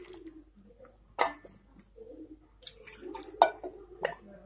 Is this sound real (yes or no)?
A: yes